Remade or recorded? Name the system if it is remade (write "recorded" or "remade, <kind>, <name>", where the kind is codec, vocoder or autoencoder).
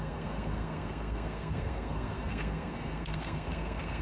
remade, codec, SNAC